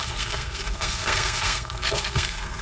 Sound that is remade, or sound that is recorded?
remade